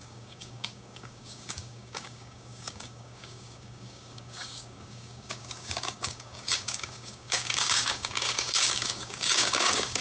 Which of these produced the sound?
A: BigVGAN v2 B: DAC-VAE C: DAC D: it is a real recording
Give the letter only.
C